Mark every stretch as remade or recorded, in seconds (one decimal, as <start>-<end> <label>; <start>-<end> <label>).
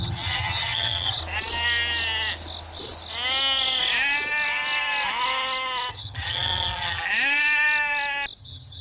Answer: 0.0-1.2 remade; 1.2-5.9 recorded; 5.9-7.0 remade; 7.0-8.4 recorded; 8.4-8.8 remade